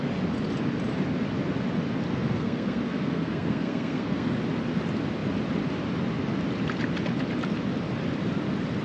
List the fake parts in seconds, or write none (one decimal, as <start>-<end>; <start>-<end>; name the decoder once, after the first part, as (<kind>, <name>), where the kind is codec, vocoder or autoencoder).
2.1-4.3 (codec, SNAC)